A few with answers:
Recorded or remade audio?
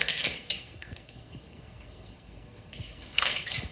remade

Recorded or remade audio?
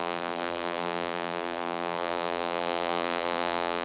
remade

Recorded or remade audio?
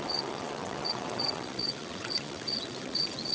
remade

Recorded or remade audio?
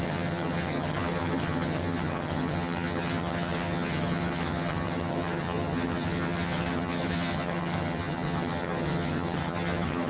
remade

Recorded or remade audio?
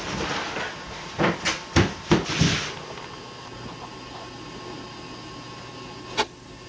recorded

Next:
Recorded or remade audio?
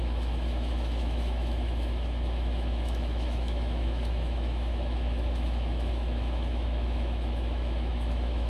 remade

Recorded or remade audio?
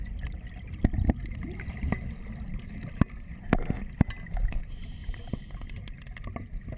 recorded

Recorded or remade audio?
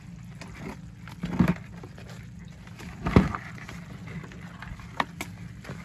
recorded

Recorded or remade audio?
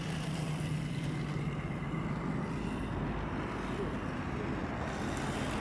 recorded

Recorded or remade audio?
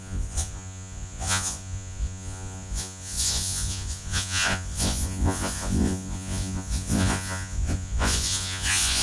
remade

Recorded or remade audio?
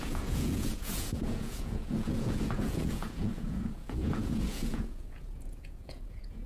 remade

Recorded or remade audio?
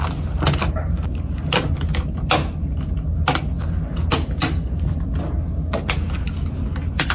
recorded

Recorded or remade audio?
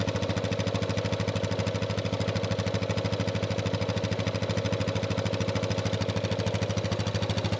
recorded